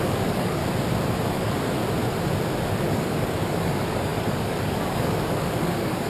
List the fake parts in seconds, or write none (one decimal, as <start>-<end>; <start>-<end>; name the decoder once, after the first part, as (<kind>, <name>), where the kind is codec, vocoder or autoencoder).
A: 0.0-0.6 (codec, DAC); 1.3-1.8; 2.9-6.1